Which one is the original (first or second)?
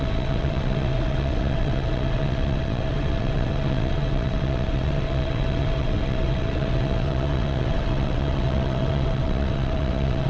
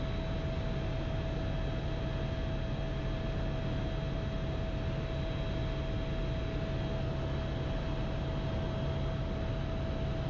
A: second